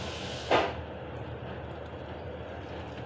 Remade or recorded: recorded